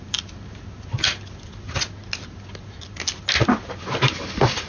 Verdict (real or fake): real